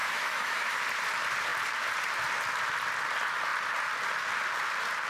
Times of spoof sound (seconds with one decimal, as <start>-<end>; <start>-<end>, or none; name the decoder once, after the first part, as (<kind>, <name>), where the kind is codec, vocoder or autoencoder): 0.0-0.8 (autoencoder, DAC-VAE)